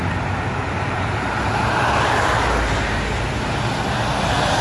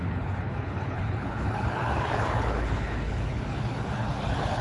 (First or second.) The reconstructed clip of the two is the second